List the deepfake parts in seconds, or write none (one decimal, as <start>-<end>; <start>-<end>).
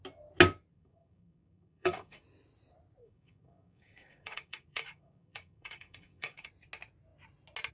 0.7-2.2; 3.0-6.5